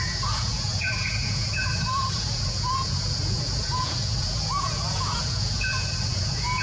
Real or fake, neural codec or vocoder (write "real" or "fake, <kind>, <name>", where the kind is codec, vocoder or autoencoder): fake, vocoder, Vocos